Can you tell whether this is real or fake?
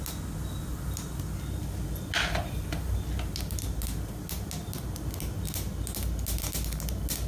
real